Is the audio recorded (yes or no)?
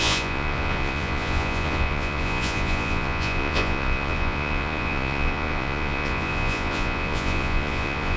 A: no